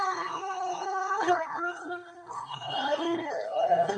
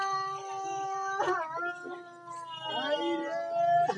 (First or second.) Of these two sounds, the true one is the second